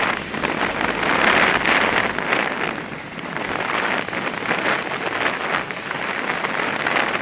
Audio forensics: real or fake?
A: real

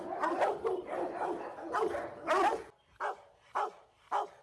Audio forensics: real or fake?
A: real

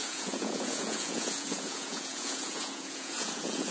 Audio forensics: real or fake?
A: fake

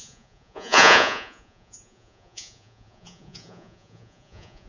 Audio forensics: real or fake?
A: fake